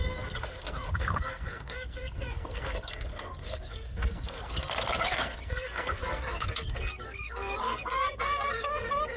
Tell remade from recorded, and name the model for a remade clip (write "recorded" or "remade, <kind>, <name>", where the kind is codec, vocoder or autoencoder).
remade, codec, SNAC